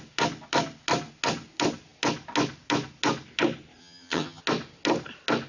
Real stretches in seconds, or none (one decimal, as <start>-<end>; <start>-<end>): 0.0-3.8; 4.4-5.5